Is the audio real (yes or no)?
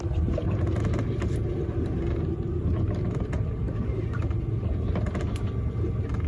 yes